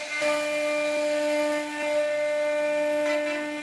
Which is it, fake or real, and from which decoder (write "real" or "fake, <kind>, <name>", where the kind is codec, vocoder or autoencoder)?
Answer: real